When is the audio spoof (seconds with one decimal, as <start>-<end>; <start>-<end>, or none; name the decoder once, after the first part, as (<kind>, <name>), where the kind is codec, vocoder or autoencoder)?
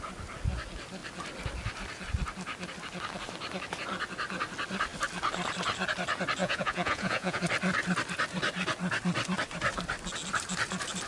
6.4-7.4 (vocoder, Vocos)